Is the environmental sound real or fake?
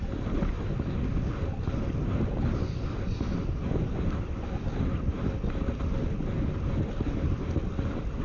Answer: real